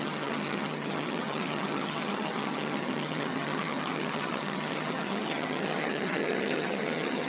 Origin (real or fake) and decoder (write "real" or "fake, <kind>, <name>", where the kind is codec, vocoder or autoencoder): fake, vocoder, HiFi-GAN